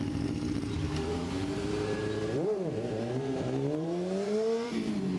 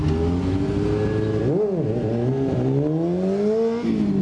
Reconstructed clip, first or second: first